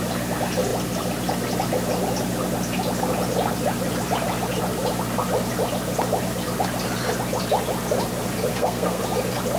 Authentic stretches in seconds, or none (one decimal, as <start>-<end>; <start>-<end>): 0.0-8.5; 9.0-9.6